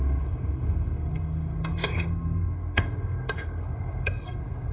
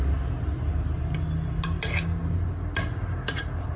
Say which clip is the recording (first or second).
second